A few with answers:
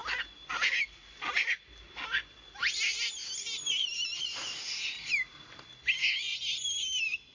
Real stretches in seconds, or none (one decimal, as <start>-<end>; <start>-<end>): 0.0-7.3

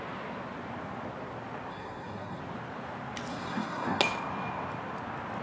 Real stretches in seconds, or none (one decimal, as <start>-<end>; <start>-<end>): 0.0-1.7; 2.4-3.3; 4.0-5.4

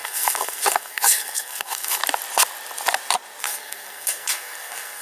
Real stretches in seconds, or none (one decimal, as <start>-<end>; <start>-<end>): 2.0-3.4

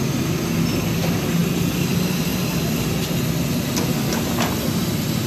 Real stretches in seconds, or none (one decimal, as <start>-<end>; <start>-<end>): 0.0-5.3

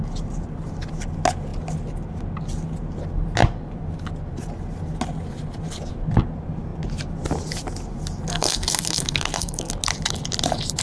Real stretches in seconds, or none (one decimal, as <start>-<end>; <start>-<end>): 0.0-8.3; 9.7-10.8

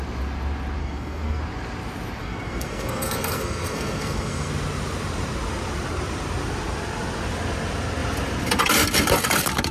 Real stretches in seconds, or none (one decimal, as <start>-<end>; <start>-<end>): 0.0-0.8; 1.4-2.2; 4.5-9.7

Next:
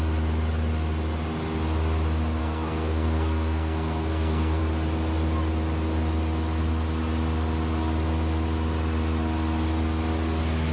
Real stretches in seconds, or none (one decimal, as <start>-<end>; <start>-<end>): 0.0-2.4; 4.6-10.7